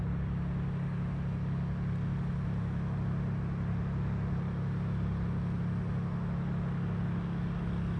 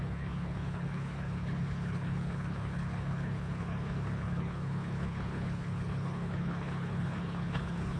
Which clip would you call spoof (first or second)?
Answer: second